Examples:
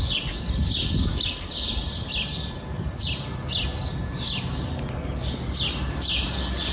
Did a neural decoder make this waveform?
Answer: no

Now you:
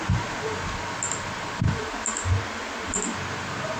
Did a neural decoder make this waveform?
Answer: no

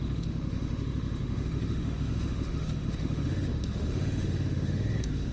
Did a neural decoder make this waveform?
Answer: yes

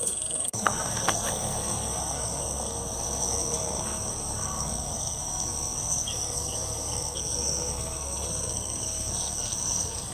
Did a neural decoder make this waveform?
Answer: yes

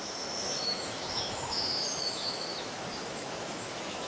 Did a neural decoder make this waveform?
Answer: yes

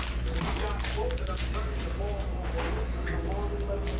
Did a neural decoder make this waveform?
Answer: no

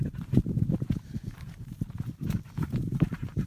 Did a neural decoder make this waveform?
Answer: yes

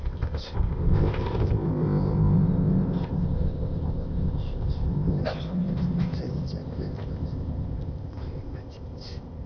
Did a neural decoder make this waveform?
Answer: yes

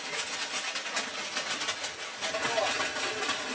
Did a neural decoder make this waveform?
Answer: no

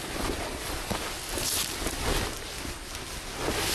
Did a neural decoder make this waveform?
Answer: no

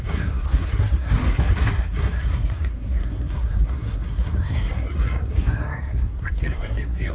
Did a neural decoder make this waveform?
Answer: yes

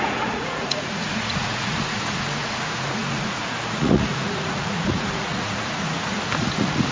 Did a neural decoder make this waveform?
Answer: yes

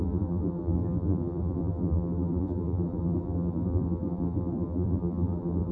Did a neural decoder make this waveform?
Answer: yes